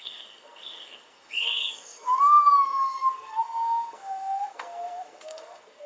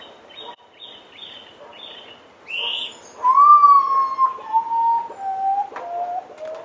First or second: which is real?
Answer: second